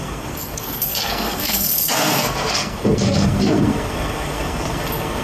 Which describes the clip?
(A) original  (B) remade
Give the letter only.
B